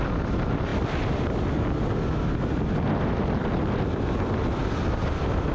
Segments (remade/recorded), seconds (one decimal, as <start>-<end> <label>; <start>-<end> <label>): 0.0-5.5 recorded